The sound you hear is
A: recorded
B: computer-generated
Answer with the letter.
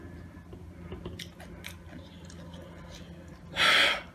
A